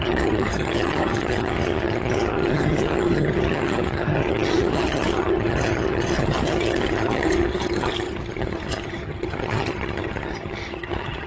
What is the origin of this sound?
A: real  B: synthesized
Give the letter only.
B